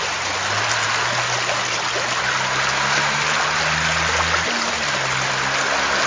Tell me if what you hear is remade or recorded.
recorded